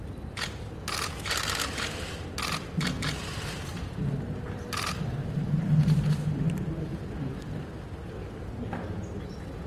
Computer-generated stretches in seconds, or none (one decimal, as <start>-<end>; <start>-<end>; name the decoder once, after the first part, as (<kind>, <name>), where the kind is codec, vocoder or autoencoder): 5.2-7.1 (vocoder, BigVGAN v2)